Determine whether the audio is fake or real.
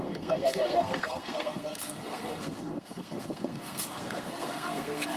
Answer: fake